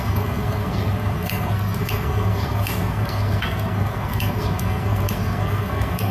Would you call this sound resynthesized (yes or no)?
yes